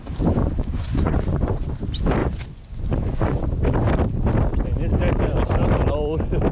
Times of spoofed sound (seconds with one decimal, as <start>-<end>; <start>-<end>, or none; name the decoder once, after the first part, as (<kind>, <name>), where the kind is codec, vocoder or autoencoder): 0.4-1.7 (vocoder, Vocos); 2.2-3.4